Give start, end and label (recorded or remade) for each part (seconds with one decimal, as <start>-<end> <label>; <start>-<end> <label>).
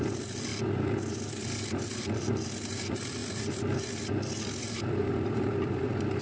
0.0-0.5 remade; 0.5-1.7 recorded; 1.7-3.2 remade; 3.2-4.6 recorded; 4.6-6.2 remade